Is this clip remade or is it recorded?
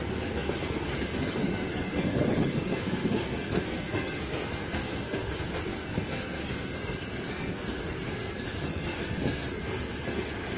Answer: remade